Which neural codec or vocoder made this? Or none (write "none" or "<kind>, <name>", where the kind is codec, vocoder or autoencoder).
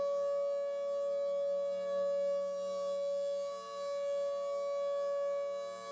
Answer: none